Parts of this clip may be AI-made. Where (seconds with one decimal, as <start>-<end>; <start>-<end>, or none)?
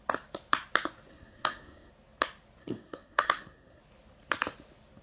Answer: 1.1-1.9; 2.6-3.8